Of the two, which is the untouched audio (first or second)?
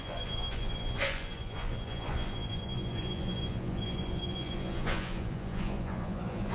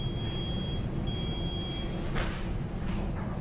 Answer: second